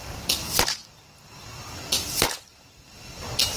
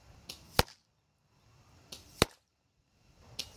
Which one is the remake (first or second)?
second